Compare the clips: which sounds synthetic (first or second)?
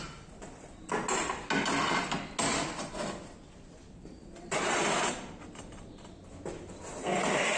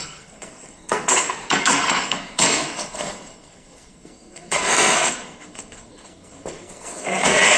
second